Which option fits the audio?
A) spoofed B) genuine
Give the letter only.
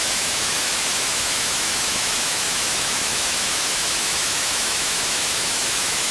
A